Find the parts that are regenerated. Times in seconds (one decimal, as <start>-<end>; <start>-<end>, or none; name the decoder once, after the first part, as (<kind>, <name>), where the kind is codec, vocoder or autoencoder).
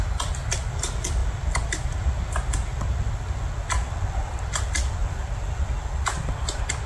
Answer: none